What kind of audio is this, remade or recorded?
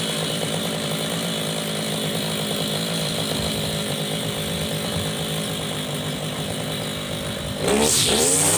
remade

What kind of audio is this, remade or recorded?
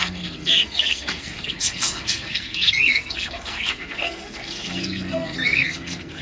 remade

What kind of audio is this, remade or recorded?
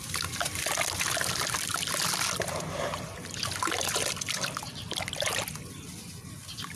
recorded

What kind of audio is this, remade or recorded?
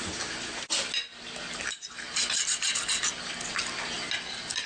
recorded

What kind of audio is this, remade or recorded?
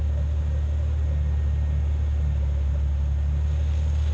recorded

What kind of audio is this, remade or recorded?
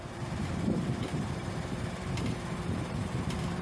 remade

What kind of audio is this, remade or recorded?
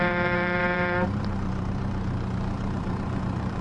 remade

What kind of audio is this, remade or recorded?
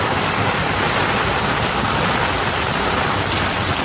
recorded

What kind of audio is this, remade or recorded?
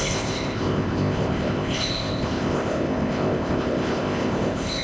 remade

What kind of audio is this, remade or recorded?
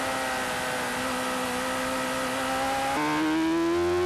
recorded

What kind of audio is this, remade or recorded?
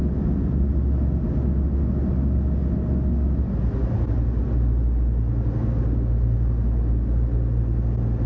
recorded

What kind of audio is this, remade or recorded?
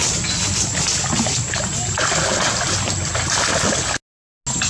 recorded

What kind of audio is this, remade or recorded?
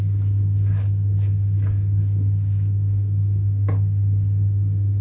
remade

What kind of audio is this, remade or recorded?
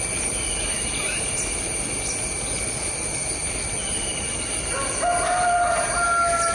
recorded